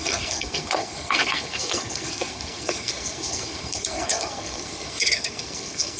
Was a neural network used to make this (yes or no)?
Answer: yes